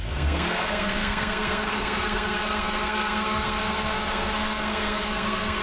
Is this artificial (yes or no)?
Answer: yes